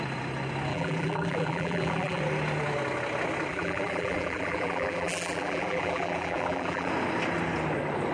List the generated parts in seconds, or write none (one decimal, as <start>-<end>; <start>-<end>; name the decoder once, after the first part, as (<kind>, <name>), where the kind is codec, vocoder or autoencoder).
0.7-2.2 (vocoder, BigVGAN v2); 3.5-6.9